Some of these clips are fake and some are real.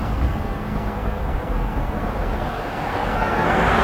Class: fake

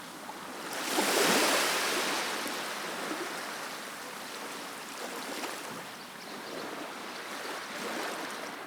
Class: real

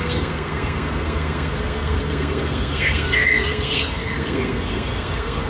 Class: fake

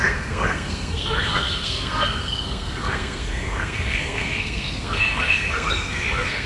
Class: fake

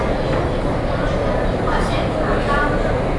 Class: real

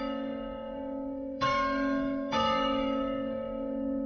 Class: fake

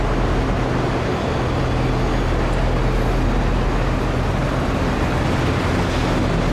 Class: real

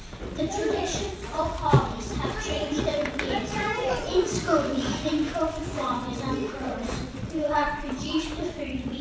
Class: fake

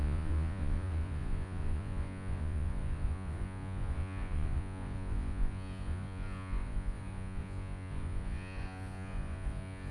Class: fake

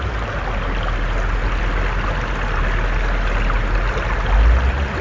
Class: real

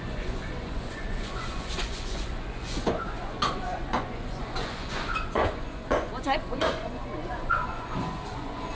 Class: fake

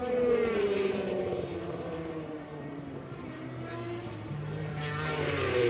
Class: fake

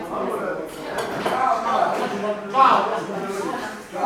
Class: fake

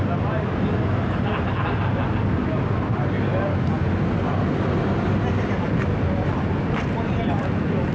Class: real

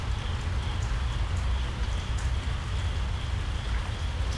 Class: real